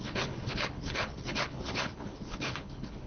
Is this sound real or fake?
fake